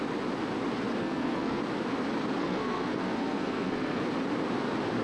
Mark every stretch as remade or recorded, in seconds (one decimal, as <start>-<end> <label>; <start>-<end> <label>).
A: 0.0-1.0 recorded; 1.0-1.6 remade; 1.6-2.4 recorded; 2.4-4.0 remade; 4.0-5.0 recorded